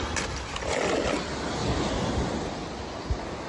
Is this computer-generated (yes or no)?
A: no